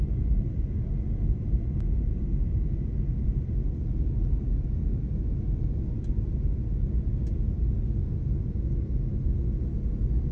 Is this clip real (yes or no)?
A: yes